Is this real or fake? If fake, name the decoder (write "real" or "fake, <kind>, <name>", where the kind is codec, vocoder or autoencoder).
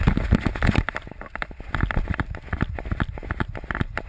real